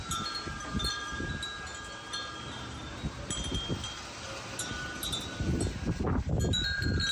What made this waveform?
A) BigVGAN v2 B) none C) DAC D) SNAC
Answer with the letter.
B